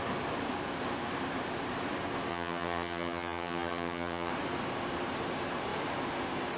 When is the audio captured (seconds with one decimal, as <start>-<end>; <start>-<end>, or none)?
0.0-2.3; 4.3-6.6